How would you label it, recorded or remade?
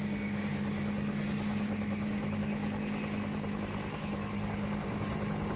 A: recorded